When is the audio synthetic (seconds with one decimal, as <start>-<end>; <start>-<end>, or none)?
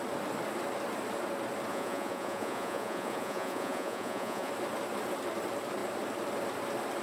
1.7-4.5